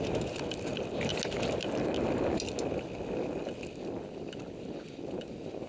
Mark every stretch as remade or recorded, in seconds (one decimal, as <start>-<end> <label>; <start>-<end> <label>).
0.0-5.7 recorded